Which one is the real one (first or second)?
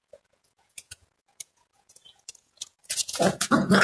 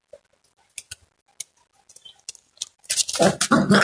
second